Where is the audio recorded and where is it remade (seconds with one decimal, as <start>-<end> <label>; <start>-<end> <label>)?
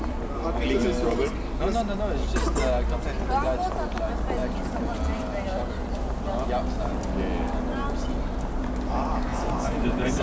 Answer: 0.0-9.3 recorded; 9.3-10.2 remade